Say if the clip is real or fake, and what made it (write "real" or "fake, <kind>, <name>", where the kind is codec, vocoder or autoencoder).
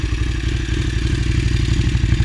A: real